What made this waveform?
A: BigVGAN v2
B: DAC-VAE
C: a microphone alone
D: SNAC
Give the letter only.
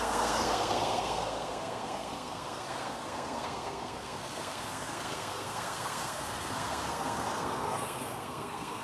D